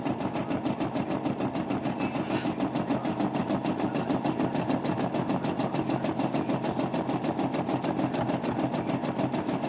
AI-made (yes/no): no